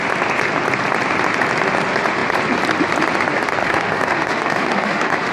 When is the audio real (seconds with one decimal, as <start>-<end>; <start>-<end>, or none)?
0.0-3.6